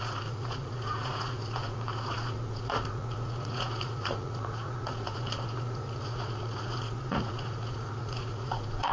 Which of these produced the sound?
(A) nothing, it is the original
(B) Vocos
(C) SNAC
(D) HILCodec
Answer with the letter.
B